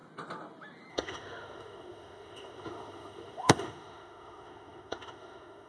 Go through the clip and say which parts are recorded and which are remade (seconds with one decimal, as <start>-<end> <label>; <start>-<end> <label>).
0.0-0.9 recorded; 0.9-5.7 remade